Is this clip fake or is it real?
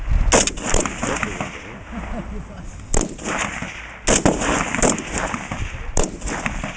real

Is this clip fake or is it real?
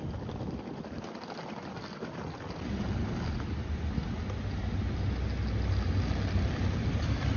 real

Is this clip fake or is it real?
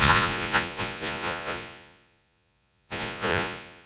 fake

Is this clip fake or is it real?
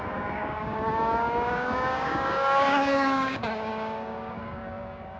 fake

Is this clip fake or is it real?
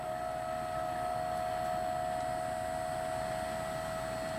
real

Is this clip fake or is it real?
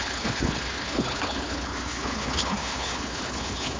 fake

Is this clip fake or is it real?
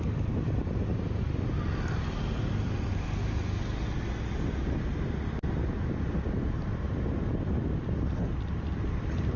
real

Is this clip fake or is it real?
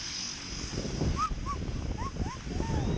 real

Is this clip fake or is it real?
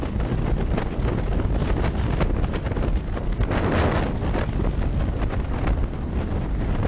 real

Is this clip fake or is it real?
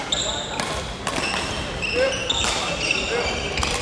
real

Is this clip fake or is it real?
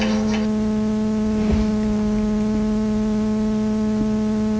real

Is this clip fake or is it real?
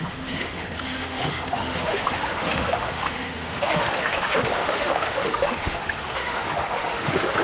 fake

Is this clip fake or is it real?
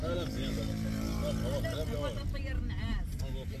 real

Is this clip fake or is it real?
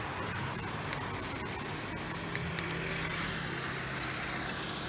real